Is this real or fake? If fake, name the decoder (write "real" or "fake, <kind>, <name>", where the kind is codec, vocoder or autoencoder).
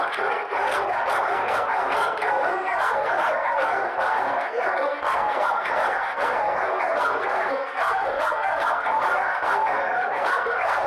fake, codec, SNAC